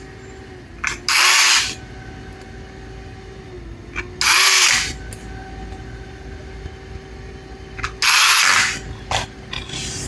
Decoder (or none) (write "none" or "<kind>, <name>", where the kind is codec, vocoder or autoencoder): none